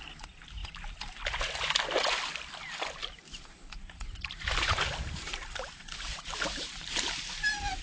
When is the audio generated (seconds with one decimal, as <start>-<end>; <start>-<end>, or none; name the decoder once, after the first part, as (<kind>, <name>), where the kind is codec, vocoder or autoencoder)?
3.0-7.8 (vocoder, BigVGAN v2)